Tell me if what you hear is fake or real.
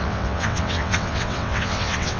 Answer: fake